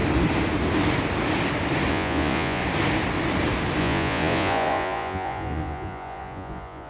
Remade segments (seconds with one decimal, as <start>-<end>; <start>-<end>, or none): 1.9-2.6; 3.8-6.9